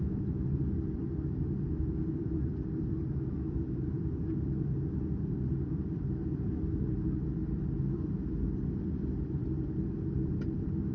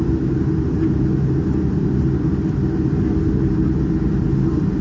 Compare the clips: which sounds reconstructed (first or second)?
first